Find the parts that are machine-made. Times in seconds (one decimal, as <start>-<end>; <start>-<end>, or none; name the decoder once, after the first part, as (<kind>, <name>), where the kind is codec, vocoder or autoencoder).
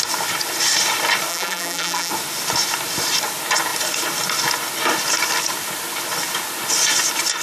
1.3-2.1 (vocoder, BigVGAN v2)